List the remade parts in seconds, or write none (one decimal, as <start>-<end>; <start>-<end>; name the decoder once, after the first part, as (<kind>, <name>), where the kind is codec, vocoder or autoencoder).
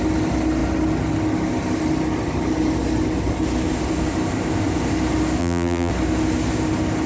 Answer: 5.4-5.9 (vocoder, BigVGAN v2)